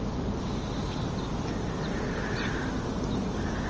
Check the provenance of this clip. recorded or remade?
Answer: recorded